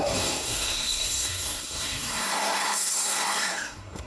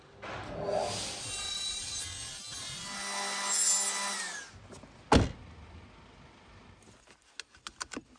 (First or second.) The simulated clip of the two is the first